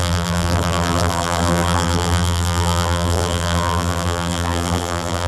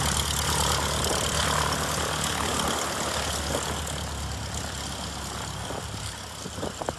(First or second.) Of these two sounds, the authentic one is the second